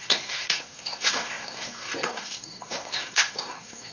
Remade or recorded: remade